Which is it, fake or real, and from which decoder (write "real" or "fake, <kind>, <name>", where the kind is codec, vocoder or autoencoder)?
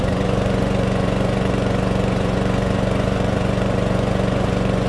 fake, vocoder, Vocos